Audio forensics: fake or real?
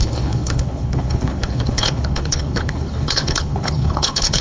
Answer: fake